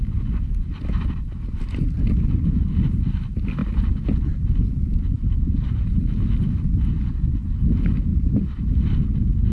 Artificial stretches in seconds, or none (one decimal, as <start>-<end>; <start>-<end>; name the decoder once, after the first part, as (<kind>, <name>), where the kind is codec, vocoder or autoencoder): 3.6-5.6 (vocoder, BigVGAN v2); 8.1-8.6